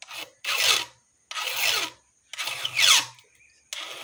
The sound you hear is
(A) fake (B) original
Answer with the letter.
B